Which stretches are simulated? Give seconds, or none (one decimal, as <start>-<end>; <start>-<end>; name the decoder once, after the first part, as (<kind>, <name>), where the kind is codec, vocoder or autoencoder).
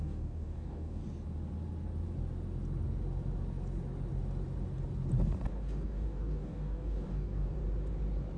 0.0-1.0 (codec, DAC); 5.5-7.6